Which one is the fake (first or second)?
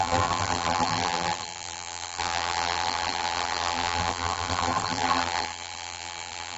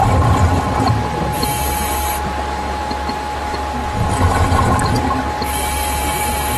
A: first